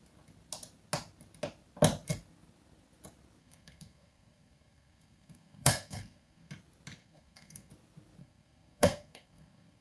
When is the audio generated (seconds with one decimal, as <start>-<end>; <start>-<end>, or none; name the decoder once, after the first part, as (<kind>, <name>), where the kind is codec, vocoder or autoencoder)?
3.4-6.5 (codec, SNAC); 7.0-7.7; 8.2-9.8